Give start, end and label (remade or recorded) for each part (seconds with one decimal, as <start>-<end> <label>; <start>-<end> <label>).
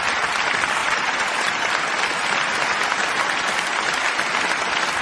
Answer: 0.0-0.8 recorded; 0.8-1.4 remade; 1.4-2.5 recorded; 2.5-3.2 remade; 3.2-5.0 recorded